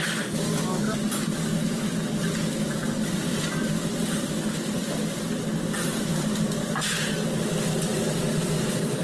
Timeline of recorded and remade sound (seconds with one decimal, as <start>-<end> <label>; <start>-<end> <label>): 0.0-9.0 recorded